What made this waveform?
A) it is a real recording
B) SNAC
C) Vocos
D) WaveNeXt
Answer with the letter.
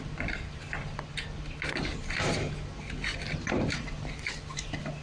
A